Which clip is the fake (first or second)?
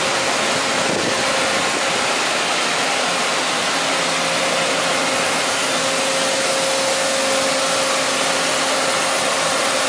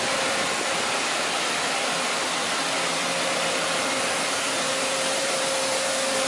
second